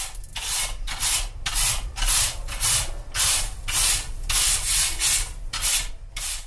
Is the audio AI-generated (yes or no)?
no